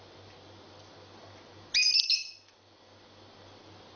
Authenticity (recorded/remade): recorded